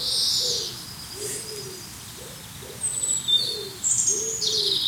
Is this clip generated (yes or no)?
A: no